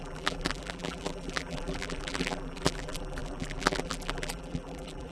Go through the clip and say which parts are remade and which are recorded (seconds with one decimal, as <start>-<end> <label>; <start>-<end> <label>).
0.0-5.1 remade